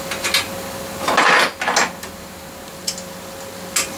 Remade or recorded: recorded